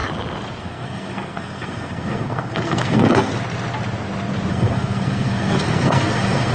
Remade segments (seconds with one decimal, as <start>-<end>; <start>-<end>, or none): 0.6-3.3; 4.5-6.5